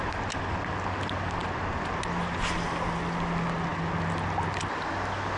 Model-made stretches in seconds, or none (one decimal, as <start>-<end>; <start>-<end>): none

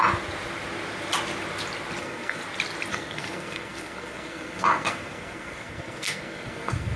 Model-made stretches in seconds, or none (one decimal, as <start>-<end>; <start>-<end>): 2.0-2.4; 2.9-7.0

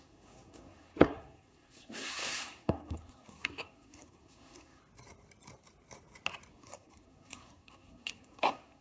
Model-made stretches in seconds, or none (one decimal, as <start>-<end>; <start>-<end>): 0.0-4.8; 6.5-8.8

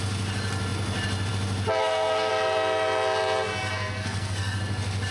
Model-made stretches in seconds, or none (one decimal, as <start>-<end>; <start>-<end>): 1.8-2.3; 3.7-4.6